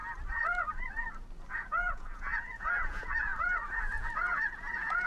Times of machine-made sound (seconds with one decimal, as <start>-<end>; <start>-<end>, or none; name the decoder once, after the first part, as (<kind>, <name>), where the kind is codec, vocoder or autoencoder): 1.5-3.3 (vocoder, Vocos); 3.8-5.1